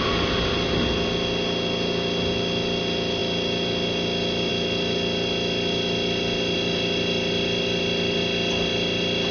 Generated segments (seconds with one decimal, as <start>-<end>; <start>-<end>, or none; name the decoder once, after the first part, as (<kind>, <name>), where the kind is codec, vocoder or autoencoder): none